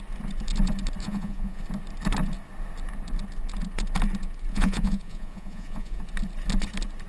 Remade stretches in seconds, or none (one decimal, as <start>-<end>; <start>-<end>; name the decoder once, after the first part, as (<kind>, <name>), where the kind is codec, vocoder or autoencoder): 1.0-1.6 (vocoder, Vocos); 4.5-6.0